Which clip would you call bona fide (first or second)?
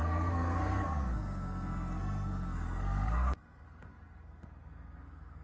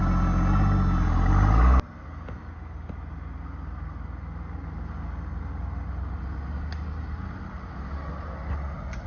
second